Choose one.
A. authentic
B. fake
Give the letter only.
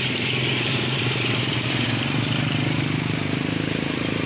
B